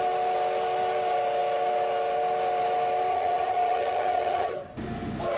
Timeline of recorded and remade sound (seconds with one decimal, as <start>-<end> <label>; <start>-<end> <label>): 0.0-3.1 recorded; 3.1-4.7 remade; 4.7-5.4 recorded